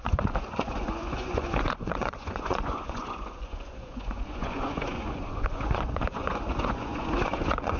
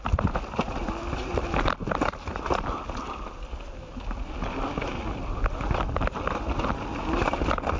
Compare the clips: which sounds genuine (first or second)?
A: second